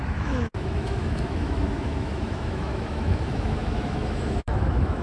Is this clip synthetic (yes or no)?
yes